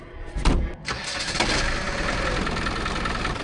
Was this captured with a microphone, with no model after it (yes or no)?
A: yes